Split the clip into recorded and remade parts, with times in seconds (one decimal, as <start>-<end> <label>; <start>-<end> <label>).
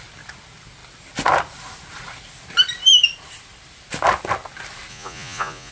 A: 0.0-4.9 recorded; 4.9-5.7 remade